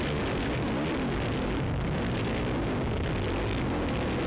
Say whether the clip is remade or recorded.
recorded